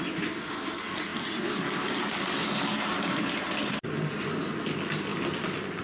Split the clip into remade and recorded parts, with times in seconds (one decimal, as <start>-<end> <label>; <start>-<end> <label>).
0.0-5.8 recorded

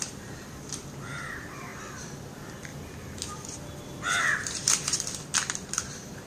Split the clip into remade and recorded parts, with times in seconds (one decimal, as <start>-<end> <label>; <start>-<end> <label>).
0.0-6.3 remade